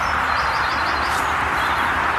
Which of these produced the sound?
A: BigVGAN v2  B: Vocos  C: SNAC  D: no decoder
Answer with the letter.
D